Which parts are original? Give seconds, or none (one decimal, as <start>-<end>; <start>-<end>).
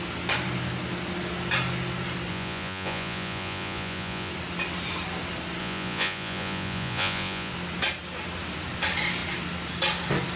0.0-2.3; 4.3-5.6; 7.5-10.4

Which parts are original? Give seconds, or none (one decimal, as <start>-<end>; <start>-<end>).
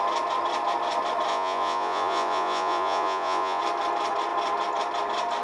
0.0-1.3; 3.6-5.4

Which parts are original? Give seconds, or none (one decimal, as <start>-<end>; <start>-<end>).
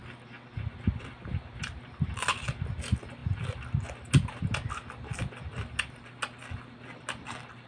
0.0-7.7